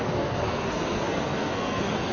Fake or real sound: fake